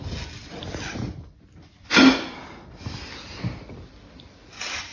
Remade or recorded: recorded